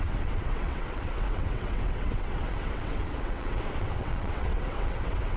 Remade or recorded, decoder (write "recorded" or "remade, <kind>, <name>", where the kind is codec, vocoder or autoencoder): remade, vocoder, WaveNeXt